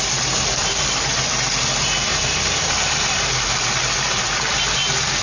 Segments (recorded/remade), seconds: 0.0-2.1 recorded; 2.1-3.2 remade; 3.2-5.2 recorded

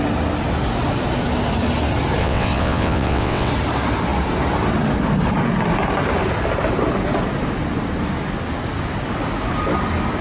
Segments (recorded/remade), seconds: 0.0-2.2 recorded; 2.2-3.5 remade; 3.5-10.2 recorded

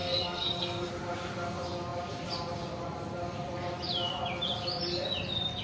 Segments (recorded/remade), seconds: 0.0-0.9 remade; 0.9-5.6 recorded

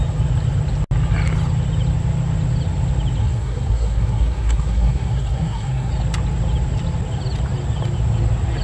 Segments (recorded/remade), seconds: 0.0-3.2 recorded; 3.2-5.9 remade; 5.9-8.6 recorded

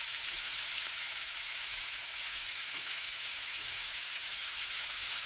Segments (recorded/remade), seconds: 0.0-5.3 remade

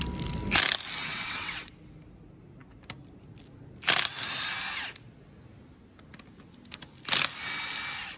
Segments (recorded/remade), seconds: 0.0-1.0 recorded; 1.0-1.7 remade; 1.7-8.2 recorded